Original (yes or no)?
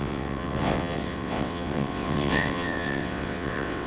no